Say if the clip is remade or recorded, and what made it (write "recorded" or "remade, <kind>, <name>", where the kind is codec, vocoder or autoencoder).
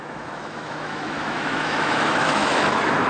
remade, autoencoder, DAC-VAE